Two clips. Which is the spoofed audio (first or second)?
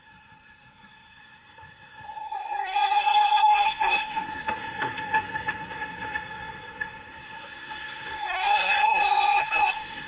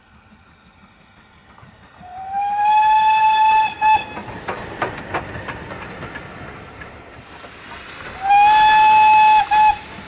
first